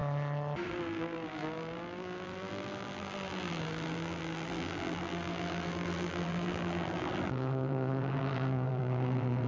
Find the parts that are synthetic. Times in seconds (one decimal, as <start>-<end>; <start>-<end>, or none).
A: 0.7-9.5